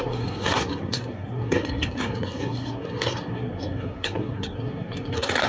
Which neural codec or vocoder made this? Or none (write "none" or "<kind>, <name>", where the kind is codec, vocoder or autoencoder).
codec, SNAC